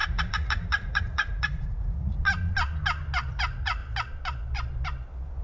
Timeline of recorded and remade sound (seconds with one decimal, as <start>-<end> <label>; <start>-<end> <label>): 0.0-2.2 remade; 2.2-3.3 recorded; 3.3-3.8 remade; 3.8-5.4 recorded